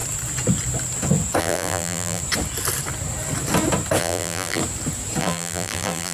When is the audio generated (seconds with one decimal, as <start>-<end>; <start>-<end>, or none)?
1.4-2.2; 4.0-4.6; 5.2-6.1